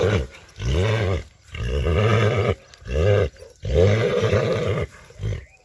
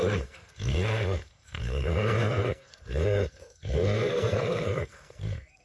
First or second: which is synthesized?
second